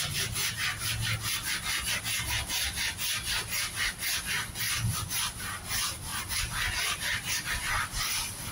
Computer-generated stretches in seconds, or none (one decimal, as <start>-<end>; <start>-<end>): none